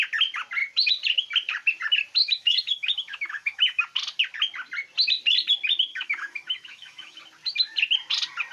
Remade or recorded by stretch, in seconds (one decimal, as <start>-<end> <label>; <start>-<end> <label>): 0.0-2.2 recorded; 2.2-3.8 remade; 3.8-5.9 recorded; 5.9-7.2 remade; 7.2-8.5 recorded